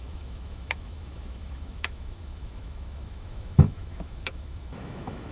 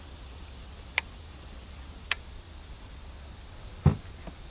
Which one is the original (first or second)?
second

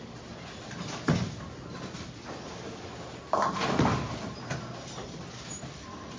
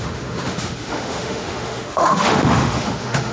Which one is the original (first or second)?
first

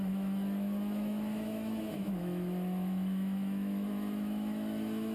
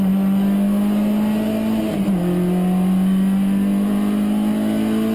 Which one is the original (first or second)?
second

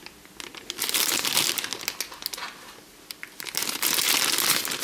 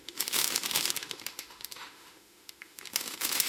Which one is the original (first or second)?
first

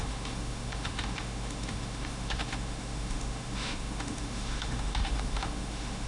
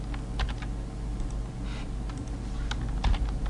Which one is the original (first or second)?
second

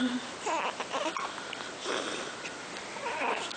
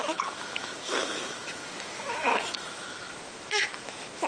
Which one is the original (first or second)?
first